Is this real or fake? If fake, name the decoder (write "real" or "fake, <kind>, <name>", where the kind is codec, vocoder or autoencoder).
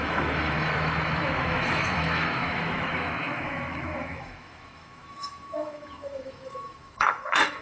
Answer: fake, autoencoder, DAC-VAE